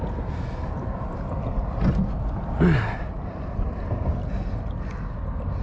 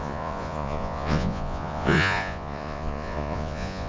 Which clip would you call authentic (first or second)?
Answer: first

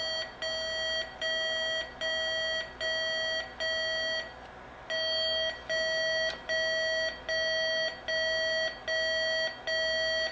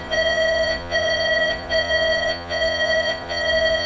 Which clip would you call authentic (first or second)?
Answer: first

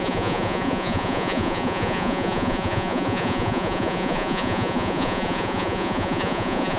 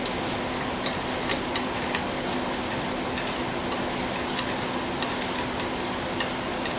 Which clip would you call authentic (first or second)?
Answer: second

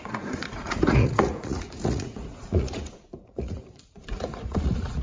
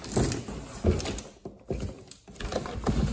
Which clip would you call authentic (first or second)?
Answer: second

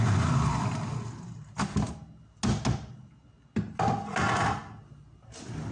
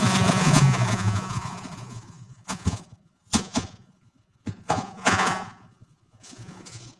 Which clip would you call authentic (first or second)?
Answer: first